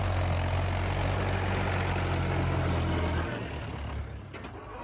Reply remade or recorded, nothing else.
recorded